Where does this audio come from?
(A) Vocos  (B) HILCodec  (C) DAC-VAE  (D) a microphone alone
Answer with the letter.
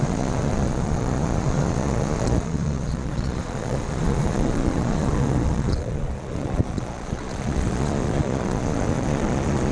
A